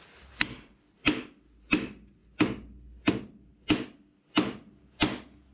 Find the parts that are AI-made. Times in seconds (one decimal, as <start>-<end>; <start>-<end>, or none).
none